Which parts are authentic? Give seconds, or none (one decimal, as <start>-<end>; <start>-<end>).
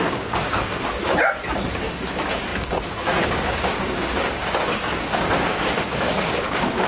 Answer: 1.1-1.8